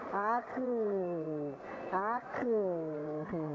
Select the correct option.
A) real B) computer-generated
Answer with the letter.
B